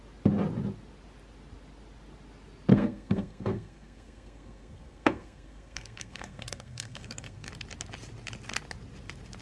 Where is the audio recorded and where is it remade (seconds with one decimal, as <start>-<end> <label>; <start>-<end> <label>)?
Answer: 0.0-2.7 recorded; 2.7-7.5 remade; 7.5-9.4 recorded